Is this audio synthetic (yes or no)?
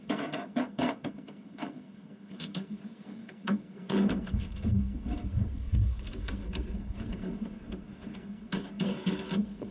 yes